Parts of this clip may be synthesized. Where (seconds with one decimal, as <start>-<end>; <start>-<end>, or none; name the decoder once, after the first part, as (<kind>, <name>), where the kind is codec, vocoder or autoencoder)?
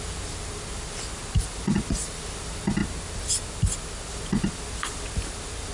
none